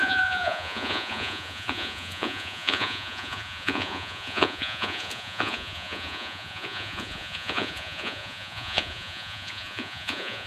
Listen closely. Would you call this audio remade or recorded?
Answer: remade